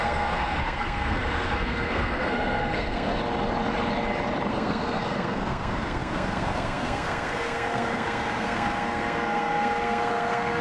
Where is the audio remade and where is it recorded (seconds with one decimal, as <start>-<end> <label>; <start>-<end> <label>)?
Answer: 0.0-3.1 remade; 3.1-4.5 recorded; 4.5-10.6 remade